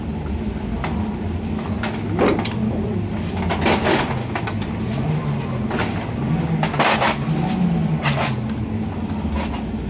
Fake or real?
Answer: real